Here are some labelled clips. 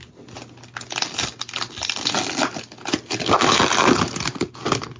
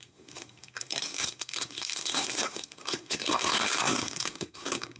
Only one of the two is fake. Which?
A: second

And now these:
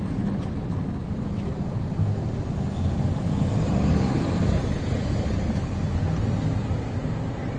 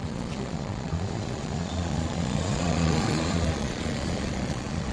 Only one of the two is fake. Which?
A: second